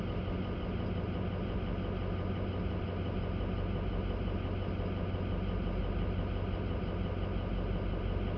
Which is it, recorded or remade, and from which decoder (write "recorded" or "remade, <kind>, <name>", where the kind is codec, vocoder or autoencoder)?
recorded